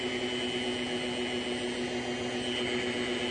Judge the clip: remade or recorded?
recorded